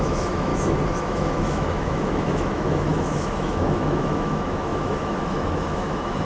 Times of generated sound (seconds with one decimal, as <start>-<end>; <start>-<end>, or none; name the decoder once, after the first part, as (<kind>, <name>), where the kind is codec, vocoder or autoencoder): 0.0-0.5 (autoencoder, DAC-VAE); 1.0-6.2